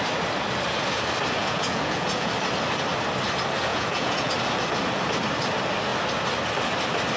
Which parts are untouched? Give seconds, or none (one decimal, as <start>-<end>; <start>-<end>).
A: 0.0-1.4; 2.3-3.7; 4.3-7.2